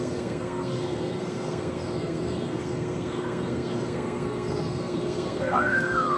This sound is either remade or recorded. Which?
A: remade